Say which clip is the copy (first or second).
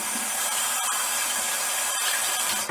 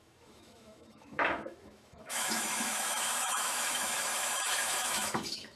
second